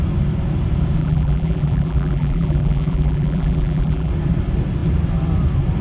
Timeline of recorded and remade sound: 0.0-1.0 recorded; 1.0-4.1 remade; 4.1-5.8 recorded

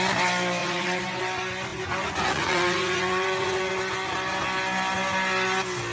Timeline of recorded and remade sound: 0.0-0.6 recorded; 0.6-1.2 remade; 1.2-1.7 recorded; 1.7-3.7 remade; 3.7-5.9 recorded

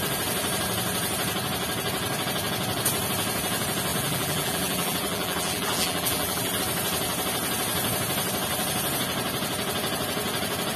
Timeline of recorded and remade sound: 0.0-3.9 recorded; 3.9-6.6 remade; 6.6-10.8 recorded

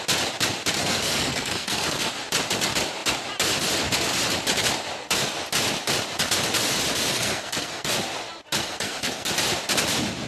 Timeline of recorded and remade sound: 0.0-0.8 recorded; 0.8-2.1 remade; 2.1-7.1 recorded; 7.1-7.9 remade; 7.9-8.6 recorded; 8.6-9.3 remade; 9.3-10.3 recorded

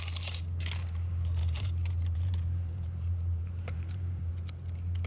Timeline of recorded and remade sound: 0.0-1.4 recorded; 1.4-4.3 remade; 4.3-5.1 recorded